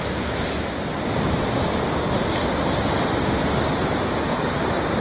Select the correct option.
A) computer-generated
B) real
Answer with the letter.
B